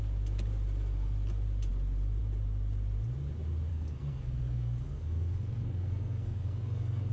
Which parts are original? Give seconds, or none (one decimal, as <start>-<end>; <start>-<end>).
0.0-3.7